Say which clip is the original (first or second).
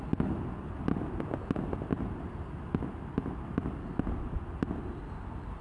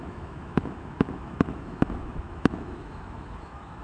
first